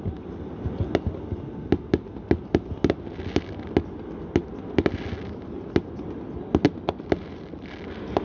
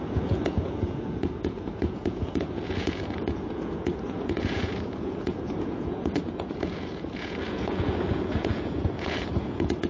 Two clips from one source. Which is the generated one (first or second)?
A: second